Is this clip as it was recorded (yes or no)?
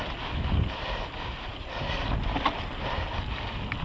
yes